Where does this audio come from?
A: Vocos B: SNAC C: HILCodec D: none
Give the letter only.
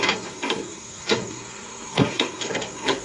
B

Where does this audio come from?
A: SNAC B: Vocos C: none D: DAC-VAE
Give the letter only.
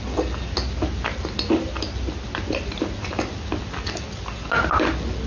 C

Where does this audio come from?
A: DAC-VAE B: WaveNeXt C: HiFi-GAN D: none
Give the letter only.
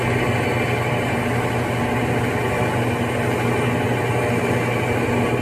D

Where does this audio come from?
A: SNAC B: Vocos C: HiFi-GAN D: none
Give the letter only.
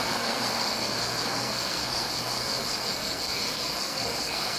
A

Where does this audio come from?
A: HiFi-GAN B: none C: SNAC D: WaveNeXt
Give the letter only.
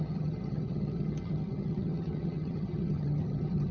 A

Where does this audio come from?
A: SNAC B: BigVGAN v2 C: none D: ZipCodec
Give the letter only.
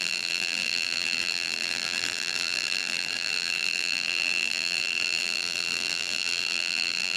B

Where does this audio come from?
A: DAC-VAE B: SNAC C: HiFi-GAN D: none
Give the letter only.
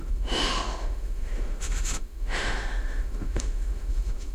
A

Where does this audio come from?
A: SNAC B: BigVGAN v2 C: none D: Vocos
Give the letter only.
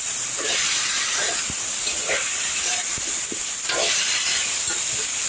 B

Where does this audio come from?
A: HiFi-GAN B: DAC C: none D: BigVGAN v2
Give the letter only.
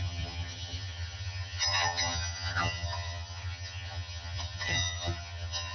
A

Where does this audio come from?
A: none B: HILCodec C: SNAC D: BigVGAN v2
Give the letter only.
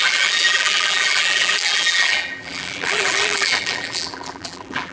D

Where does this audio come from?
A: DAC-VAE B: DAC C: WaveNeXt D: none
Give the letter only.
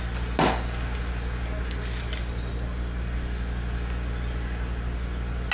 D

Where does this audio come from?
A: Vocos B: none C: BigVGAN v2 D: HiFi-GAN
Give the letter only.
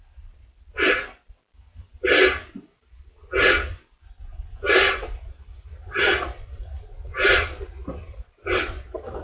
B